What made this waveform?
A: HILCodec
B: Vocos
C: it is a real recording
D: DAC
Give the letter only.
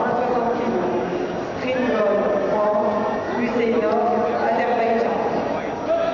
C